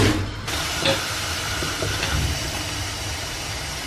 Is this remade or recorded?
recorded